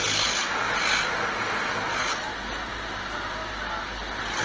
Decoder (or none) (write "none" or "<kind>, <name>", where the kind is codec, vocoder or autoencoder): none